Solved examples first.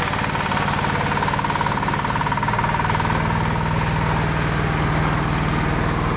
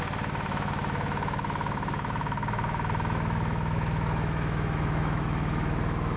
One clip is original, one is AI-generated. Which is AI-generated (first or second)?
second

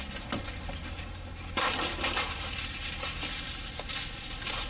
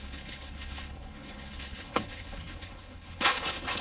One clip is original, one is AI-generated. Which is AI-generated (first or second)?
second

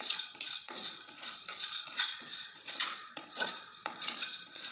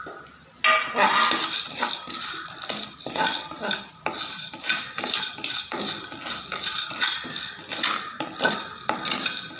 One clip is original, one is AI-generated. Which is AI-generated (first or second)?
first